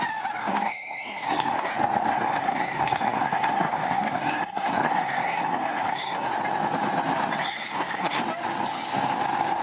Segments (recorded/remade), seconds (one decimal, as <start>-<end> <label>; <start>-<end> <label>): 0.0-0.4 recorded; 0.4-1.7 remade; 1.7-2.1 recorded; 2.1-6.3 remade; 6.3-7.4 recorded; 7.4-8.2 remade; 8.2-9.6 recorded